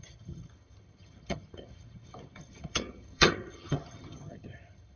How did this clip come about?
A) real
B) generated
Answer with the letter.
B